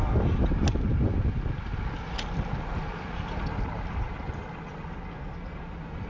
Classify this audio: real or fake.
real